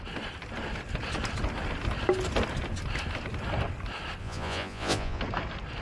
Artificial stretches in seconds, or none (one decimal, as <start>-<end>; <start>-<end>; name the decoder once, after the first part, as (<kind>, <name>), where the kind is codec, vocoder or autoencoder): 4.2-5.2 (vocoder, Vocos)